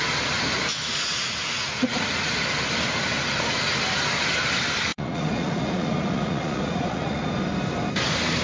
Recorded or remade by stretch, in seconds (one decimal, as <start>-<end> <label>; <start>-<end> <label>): 0.0-0.7 recorded; 0.7-2.3 remade; 2.3-4.9 recorded; 4.9-7.3 remade; 7.3-8.4 recorded